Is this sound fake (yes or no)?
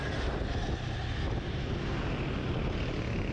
no